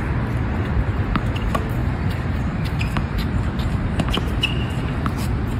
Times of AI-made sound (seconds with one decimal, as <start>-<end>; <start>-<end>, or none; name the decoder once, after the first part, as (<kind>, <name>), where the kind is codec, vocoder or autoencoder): 1.8-4.6 (vocoder, BigVGAN v2)